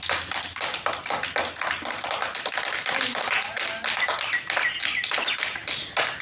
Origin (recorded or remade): recorded